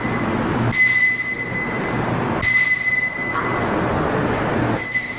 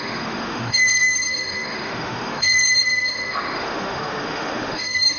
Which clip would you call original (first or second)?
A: first